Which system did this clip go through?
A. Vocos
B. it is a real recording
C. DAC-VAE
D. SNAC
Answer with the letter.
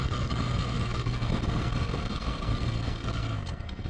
D